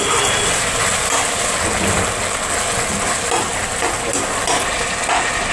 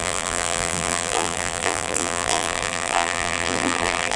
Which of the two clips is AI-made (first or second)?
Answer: second